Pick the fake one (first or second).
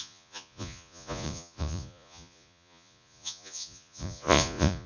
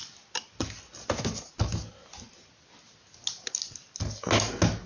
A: first